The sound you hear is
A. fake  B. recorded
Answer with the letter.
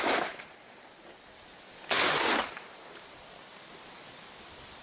B